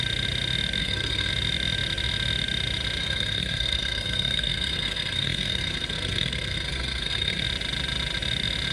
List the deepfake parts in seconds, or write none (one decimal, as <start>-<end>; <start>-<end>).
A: 0.8-1.3; 3.0-7.4